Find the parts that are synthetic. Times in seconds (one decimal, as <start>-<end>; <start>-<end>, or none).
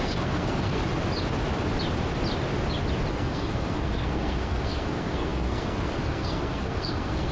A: 0.0-0.8; 3.1-7.3